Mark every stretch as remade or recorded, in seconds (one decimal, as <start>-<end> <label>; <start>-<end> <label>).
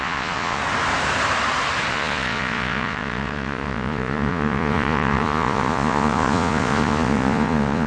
0.0-0.6 remade; 0.6-1.9 recorded; 1.9-7.9 remade